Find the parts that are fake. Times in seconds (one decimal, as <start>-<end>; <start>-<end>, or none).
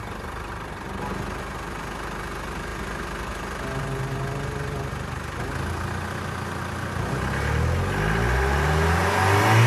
none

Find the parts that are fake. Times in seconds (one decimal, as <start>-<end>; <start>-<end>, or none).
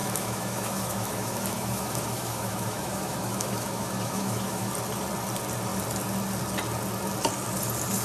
0.0-4.7